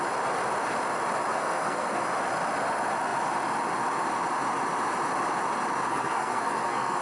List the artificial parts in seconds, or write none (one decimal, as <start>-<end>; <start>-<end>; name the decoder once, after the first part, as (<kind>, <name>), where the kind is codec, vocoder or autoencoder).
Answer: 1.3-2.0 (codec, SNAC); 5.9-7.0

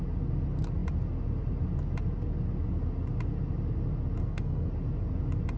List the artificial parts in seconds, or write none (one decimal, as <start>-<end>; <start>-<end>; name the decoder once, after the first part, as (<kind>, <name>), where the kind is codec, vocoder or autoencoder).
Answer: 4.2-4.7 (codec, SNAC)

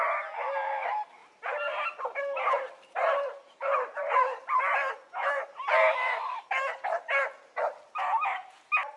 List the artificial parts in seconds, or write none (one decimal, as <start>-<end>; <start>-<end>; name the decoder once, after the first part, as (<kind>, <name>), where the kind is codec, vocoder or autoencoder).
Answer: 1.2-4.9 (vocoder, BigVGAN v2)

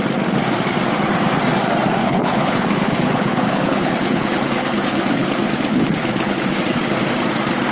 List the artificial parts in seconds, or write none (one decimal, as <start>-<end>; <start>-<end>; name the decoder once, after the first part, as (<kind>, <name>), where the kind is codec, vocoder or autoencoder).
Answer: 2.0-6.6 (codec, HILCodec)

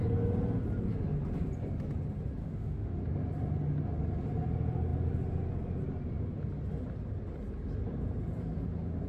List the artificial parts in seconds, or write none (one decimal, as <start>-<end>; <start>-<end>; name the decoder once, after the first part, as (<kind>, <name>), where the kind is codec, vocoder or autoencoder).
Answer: 2.4-3.0 (autoencoder, DAC-VAE)

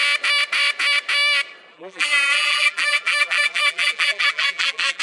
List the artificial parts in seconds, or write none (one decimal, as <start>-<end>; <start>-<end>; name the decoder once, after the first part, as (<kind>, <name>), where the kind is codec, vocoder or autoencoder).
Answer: 1.7-5.0 (vocoder, BigVGAN v2)